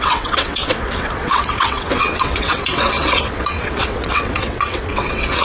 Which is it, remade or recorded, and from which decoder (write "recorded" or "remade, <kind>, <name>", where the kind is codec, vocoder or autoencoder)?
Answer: remade, vocoder, WaveNeXt